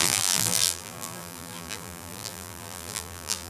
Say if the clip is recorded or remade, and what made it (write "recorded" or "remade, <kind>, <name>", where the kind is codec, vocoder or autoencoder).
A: remade, vocoder, BigVGAN v2